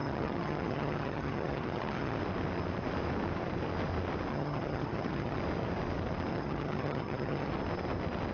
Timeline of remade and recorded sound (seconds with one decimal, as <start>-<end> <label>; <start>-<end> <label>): 0.0-2.2 remade; 2.2-4.3 recorded; 4.3-5.4 remade; 5.4-6.3 recorded; 6.3-7.5 remade; 7.5-8.3 recorded